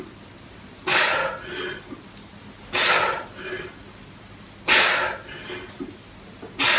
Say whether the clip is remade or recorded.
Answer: recorded